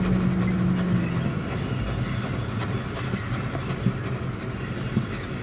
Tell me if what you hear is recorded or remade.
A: recorded